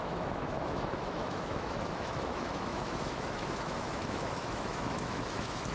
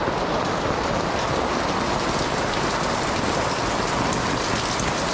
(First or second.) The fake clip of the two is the first